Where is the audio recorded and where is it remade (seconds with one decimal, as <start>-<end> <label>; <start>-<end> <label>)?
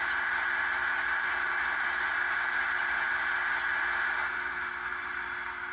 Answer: 0.0-5.7 recorded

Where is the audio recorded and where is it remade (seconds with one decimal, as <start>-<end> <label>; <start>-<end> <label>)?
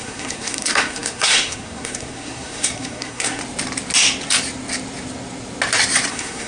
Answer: 0.0-3.4 remade; 3.4-6.1 recorded; 6.1-6.5 remade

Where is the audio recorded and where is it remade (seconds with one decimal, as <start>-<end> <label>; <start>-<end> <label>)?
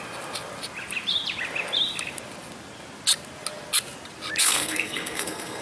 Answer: 0.0-4.4 recorded; 4.4-5.6 remade